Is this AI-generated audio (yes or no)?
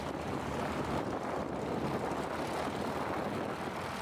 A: no